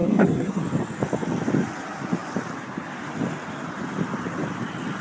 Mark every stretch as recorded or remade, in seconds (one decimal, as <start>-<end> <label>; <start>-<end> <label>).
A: 0.0-0.6 remade; 0.6-5.0 recorded